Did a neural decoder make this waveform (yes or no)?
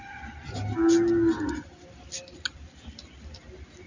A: no